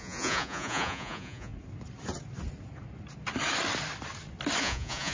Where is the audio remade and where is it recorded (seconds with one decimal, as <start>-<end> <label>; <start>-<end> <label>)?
0.0-1.5 remade; 1.5-4.6 recorded; 4.6-5.1 remade